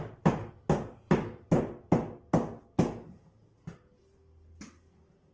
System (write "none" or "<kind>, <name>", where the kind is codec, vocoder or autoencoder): none